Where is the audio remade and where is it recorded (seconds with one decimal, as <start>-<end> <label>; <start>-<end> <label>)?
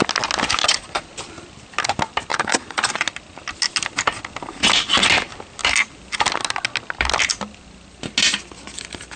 0.0-0.6 recorded; 0.6-1.1 remade; 1.1-2.3 recorded; 2.3-2.9 remade; 2.9-9.2 recorded